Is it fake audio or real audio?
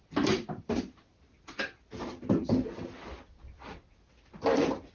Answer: real